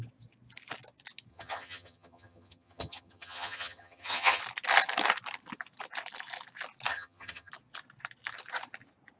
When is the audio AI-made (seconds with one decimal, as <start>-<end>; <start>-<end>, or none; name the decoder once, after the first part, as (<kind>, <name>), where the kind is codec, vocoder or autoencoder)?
1.3-4.4 (vocoder, HiFi-GAN); 6.9-7.5